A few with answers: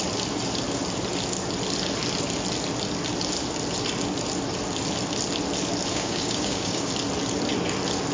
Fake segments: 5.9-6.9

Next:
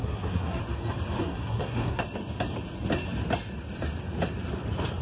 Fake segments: 0.0-0.6; 1.2-2.0

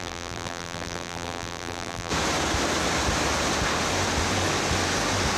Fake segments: 0.0-2.1

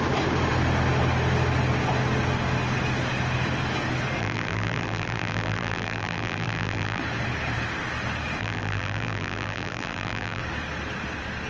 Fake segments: 4.2-7.0; 8.4-10.4

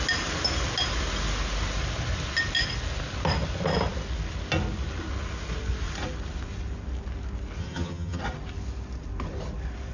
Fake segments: 7.6-8.2

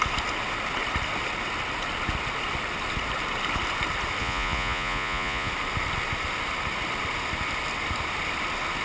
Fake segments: 4.2-5.5